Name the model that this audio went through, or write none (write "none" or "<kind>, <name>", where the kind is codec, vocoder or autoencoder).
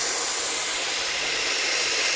none